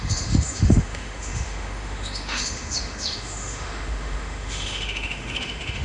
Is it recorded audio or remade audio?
remade